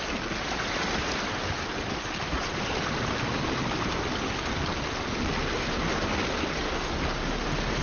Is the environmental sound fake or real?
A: real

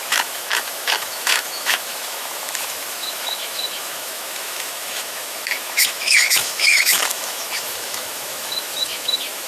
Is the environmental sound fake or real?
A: fake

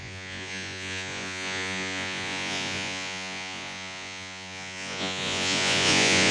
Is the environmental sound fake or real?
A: fake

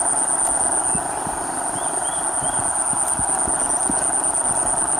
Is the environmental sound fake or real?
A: real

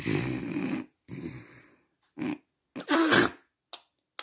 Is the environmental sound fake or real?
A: real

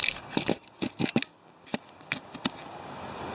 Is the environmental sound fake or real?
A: real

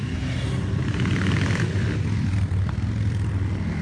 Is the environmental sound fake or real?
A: fake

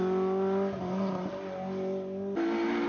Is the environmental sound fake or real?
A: real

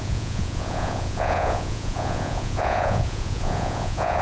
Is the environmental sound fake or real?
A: fake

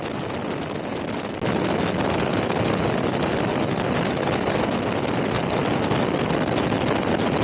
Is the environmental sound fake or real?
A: real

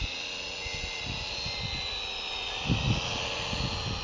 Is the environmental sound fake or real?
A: real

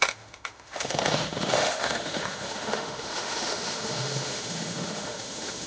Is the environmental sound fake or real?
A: fake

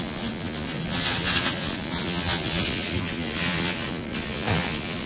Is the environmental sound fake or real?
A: fake